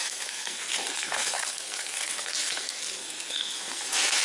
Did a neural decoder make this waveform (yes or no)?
yes